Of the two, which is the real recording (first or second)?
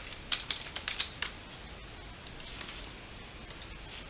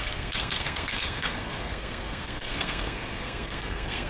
first